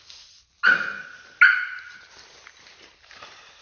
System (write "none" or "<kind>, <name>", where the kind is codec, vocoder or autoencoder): none